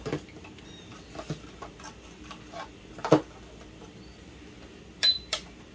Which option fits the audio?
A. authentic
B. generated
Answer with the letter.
A